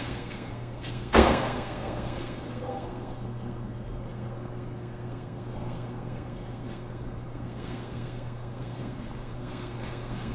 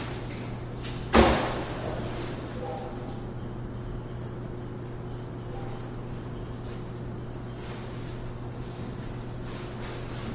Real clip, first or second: second